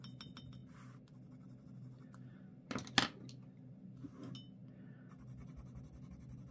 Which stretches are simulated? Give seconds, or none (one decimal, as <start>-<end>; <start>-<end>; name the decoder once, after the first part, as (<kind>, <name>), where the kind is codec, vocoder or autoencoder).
none